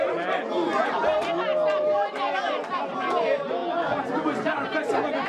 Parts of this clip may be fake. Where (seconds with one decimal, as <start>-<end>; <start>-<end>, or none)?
none